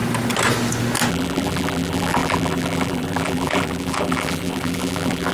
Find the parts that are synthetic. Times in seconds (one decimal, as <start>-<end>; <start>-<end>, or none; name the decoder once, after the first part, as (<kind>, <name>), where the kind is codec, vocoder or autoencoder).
1.1-5.3 (vocoder, BigVGAN v2)